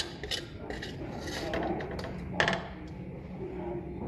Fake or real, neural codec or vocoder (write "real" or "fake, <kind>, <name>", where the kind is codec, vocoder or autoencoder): real